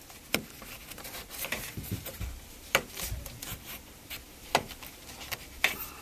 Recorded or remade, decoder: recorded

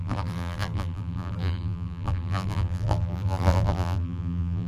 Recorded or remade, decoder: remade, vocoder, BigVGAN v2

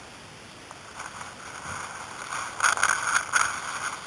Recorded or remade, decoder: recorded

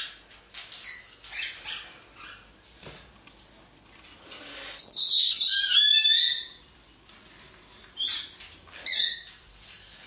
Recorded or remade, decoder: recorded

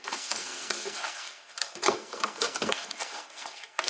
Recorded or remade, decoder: remade, codec, SNAC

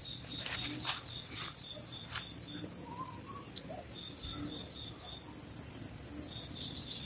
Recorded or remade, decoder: recorded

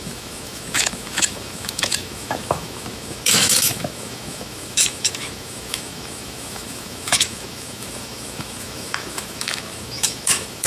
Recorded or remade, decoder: remade, autoencoder, DAC-VAE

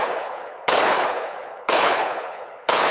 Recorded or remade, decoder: remade, codec, HILCodec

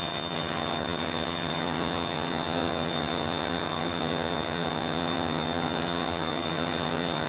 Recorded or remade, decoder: remade, vocoder, HiFi-GAN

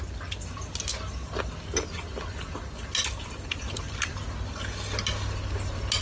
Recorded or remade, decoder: recorded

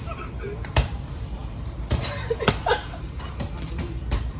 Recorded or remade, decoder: remade, vocoder, BigVGAN v2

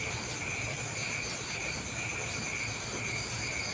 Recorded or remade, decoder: recorded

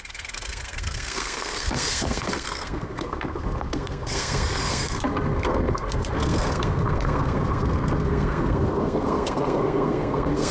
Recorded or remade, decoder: remade, codec, SNAC